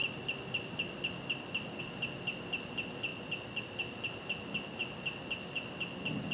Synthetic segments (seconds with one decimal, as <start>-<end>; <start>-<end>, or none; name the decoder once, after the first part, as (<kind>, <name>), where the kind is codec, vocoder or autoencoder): none